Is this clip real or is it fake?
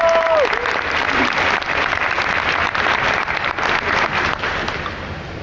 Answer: real